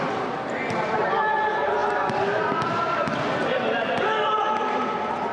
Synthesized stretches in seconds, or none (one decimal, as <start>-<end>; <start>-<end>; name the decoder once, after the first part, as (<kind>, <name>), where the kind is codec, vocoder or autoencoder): none